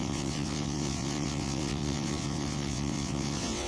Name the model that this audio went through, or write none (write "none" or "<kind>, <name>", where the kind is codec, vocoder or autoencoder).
vocoder, WaveNeXt